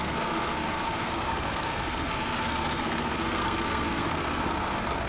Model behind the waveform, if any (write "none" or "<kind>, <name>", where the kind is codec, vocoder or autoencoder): codec, SNAC